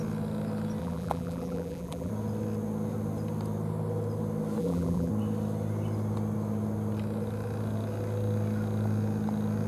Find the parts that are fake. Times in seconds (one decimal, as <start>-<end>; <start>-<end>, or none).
0.8-2.1; 4.6-5.1

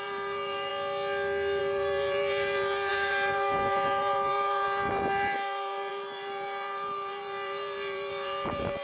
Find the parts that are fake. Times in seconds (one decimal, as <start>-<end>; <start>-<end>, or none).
0.0-0.7; 1.6-8.8